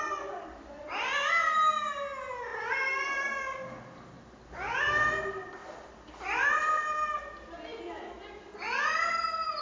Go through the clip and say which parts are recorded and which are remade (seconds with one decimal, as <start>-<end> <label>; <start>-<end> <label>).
0.0-5.6 recorded; 5.6-6.5 remade; 6.5-7.7 recorded; 7.7-9.6 remade